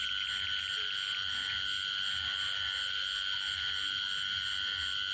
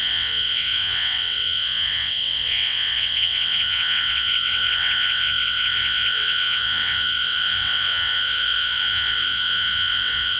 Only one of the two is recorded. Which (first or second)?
first